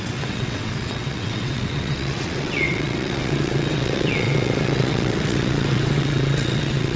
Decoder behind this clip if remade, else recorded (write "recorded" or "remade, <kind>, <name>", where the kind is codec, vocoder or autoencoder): remade, vocoder, WaveNeXt